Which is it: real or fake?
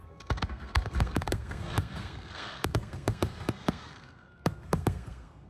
fake